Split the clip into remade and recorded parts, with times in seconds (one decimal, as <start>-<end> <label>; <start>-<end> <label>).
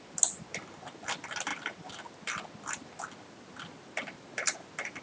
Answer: 0.0-5.0 recorded